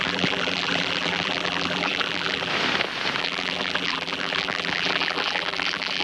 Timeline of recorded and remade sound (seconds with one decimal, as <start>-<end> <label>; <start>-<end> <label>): 0.0-2.5 remade; 2.5-3.2 recorded; 3.2-6.0 remade